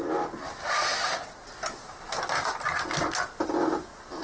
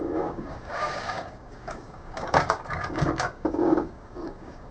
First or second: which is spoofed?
second